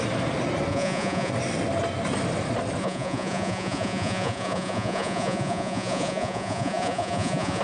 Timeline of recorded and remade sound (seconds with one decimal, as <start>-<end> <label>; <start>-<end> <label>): 0.0-0.7 recorded; 0.7-1.3 remade; 1.3-2.8 recorded; 2.8-7.6 remade